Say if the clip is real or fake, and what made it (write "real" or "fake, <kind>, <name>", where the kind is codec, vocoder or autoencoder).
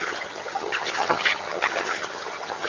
fake, vocoder, HiFi-GAN